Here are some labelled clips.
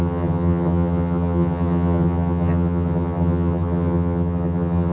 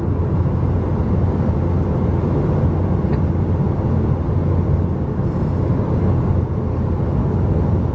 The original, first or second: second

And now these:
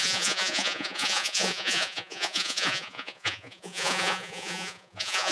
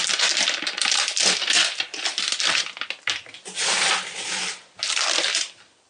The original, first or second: second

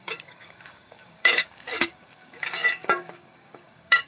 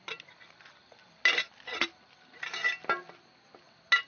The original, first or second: second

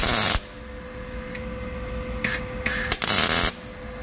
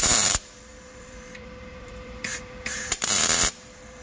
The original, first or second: first